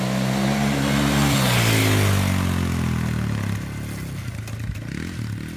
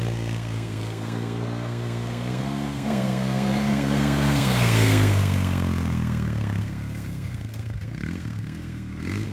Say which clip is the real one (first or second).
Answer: first